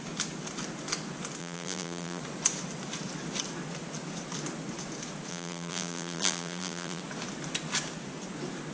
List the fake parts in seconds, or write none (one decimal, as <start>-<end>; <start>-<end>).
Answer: 1.4-2.2; 5.3-7.0